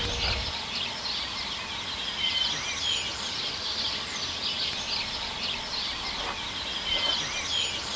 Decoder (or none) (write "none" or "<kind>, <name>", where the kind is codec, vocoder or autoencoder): none